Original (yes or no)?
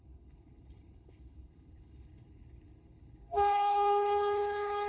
no